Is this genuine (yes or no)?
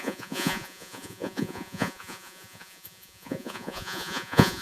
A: no